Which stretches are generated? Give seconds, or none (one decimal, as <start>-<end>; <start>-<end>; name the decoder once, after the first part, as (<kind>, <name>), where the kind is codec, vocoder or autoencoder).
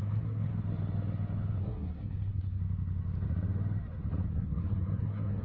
0.0-0.5 (codec, SNAC); 1.6-2.6; 4.3-5.4